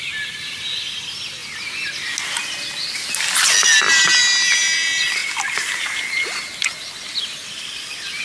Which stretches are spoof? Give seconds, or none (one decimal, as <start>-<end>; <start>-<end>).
none

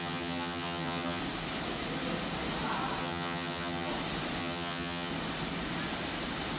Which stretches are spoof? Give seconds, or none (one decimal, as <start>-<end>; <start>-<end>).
0.0-1.2; 3.0-3.9; 4.4-5.1

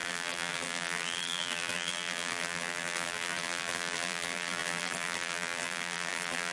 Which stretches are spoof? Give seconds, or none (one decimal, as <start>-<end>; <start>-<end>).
0.0-6.5

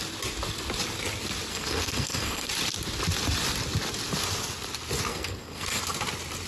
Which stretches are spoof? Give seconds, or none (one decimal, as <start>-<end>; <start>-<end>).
1.5-2.5; 5.1-5.8